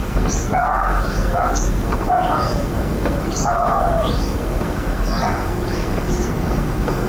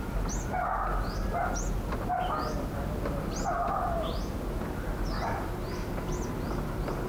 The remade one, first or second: first